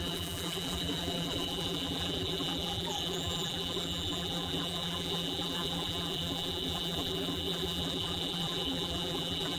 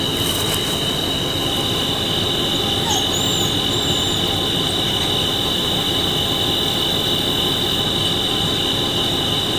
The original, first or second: second